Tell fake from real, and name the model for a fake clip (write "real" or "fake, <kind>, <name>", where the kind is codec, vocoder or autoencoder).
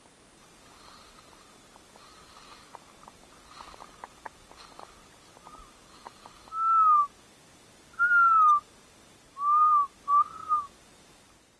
real